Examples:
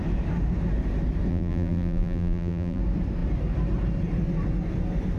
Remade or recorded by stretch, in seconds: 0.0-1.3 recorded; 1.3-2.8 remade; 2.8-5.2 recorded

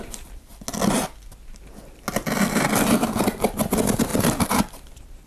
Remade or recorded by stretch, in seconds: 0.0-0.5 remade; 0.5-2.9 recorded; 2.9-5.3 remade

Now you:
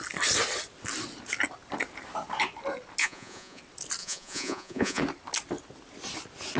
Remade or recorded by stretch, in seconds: 0.0-3.0 recorded; 3.0-3.6 remade; 3.6-4.0 recorded; 4.0-5.0 remade; 5.0-6.6 recorded

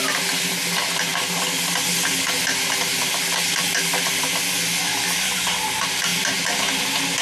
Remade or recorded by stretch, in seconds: 0.0-7.2 recorded

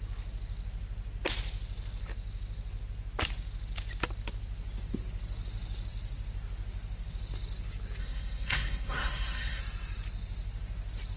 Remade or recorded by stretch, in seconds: 0.0-8.0 recorded; 8.0-9.6 remade; 9.6-11.2 recorded